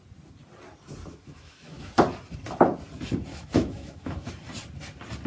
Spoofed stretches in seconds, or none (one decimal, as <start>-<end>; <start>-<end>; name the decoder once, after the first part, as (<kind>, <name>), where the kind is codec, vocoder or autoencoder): 1.1-1.9 (autoencoder, DAC-VAE); 3.3-4.3